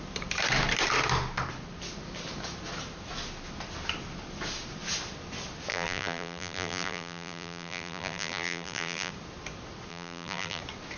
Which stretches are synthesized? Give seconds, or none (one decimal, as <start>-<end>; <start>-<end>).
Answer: 5.7-9.1; 9.9-10.6